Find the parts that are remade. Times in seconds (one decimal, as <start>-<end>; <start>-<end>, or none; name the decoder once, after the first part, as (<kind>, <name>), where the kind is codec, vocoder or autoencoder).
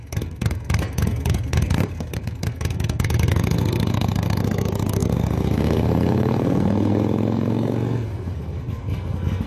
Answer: 0.0-9.5 (codec, SNAC)